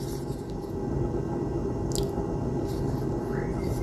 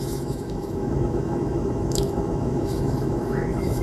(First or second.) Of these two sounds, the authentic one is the first